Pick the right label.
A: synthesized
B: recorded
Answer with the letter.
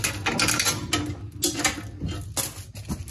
B